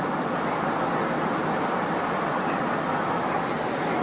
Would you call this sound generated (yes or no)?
no